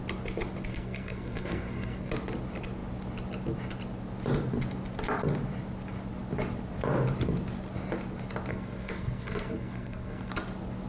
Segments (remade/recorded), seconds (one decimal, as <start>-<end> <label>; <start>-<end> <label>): 0.0-0.7 recorded; 0.7-2.1 remade; 2.1-8.5 recorded; 8.5-10.3 remade; 10.3-10.9 recorded